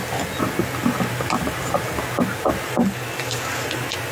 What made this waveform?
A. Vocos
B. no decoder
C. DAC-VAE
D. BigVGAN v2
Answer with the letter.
B